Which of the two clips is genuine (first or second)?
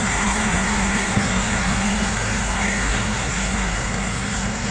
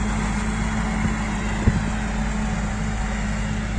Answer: second